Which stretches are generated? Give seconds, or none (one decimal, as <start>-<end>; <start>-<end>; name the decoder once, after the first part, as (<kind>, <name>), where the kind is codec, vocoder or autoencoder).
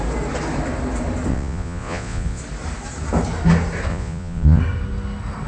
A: 1.3-2.4 (vocoder, Vocos); 3.9-4.6